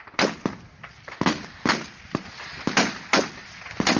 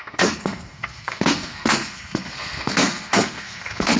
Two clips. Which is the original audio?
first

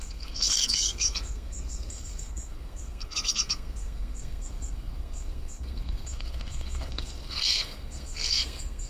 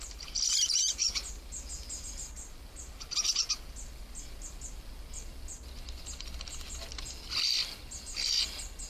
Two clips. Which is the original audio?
second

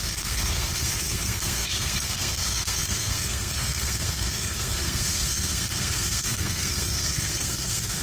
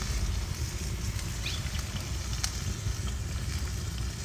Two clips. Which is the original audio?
second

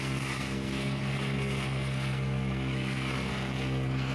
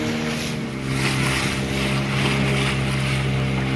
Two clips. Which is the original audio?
second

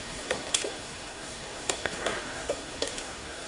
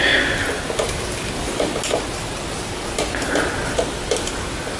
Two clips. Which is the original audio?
second